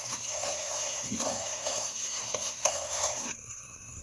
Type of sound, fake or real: fake